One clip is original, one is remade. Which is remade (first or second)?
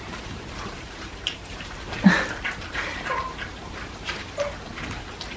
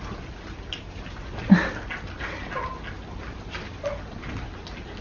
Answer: first